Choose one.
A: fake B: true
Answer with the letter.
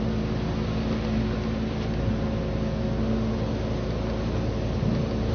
B